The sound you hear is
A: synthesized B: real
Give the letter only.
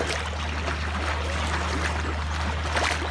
B